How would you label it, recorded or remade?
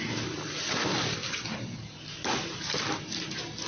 recorded